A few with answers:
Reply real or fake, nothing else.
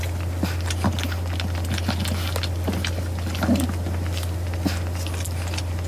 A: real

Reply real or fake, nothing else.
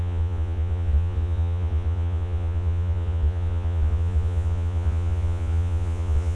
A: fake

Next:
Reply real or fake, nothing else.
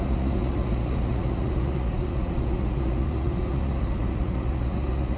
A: fake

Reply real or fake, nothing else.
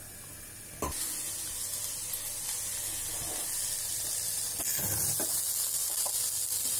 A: real